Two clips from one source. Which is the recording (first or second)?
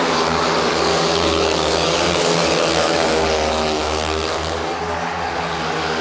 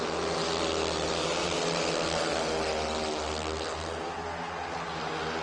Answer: second